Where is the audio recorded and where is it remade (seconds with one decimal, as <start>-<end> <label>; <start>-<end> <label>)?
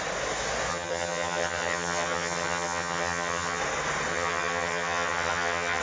0.0-0.7 recorded; 0.7-3.6 remade; 3.6-4.1 recorded; 4.1-5.8 remade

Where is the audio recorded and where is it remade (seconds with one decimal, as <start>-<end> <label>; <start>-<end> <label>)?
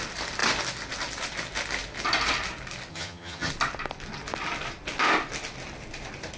0.0-2.9 recorded; 2.9-3.5 remade; 3.5-6.4 recorded